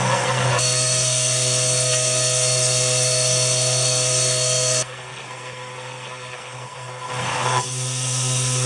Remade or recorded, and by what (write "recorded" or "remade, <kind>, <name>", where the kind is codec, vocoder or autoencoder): remade, codec, SNAC